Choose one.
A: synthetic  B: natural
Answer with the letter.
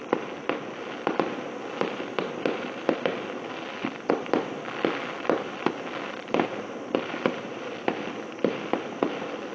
B